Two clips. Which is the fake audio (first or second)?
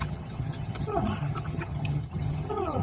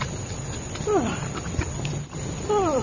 first